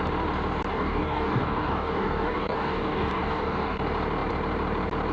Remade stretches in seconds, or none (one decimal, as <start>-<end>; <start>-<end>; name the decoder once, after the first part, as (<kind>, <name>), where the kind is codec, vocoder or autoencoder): 0.7-3.8 (codec, DAC)